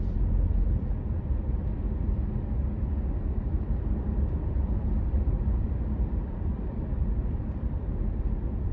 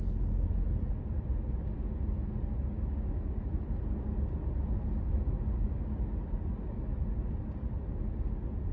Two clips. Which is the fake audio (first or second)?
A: first